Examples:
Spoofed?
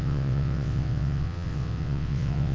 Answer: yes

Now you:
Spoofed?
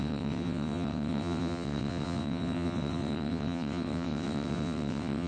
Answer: yes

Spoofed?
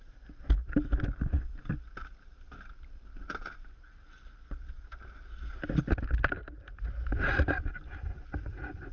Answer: no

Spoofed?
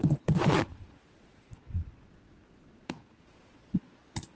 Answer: yes